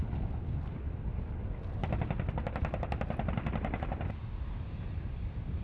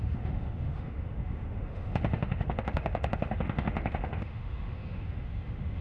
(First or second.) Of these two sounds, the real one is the first